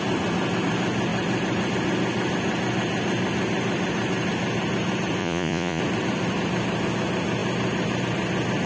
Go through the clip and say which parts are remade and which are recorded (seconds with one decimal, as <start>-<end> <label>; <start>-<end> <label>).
0.0-5.2 recorded; 5.2-5.8 remade; 5.8-8.7 recorded